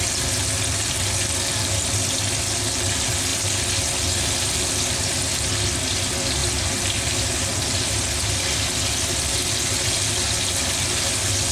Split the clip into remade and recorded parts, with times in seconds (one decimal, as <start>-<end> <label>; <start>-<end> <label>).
0.0-11.5 recorded